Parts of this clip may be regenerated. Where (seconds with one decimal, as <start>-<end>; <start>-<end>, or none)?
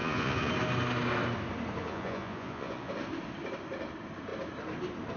0.0-0.5; 1.8-2.9